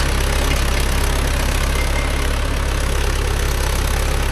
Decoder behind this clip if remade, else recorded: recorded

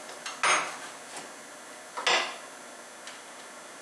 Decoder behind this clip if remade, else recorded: recorded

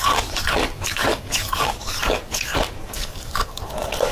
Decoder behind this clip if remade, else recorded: remade, codec, DAC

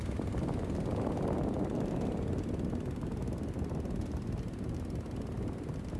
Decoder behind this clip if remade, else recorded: recorded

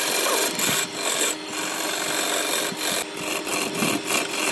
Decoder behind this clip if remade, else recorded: recorded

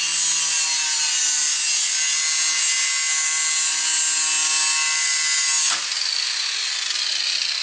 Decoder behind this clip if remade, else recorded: recorded